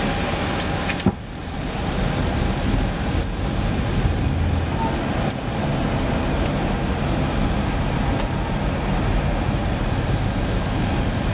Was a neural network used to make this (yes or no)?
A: no